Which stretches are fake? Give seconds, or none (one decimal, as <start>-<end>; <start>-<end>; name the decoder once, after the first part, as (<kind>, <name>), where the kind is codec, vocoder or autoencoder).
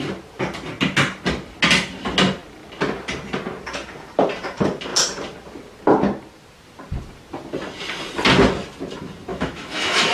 9.3-10.1 (autoencoder, DAC-VAE)